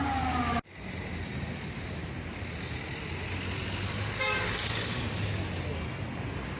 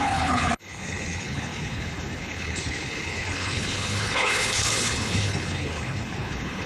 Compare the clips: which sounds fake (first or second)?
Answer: second